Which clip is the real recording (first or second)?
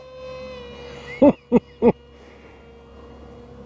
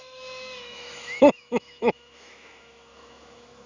first